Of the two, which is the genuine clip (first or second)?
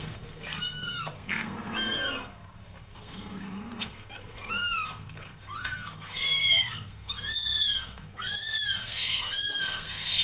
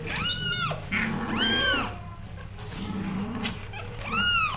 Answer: second